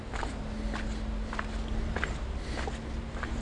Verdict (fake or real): real